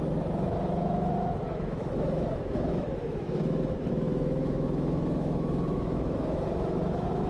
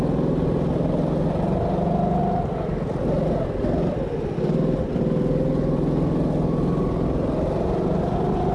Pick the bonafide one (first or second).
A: second